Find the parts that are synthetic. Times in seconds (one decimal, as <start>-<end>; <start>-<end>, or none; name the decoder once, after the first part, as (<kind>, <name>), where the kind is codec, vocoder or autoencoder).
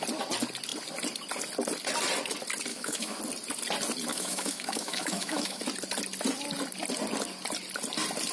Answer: 2.7-3.2 (autoencoder, DAC-VAE); 4.1-5.6